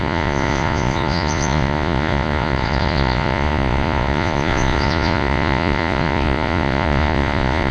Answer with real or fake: fake